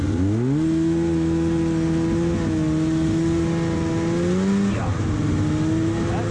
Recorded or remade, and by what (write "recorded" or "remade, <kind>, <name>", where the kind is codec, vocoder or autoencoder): recorded